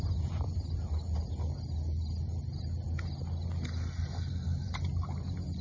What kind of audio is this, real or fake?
real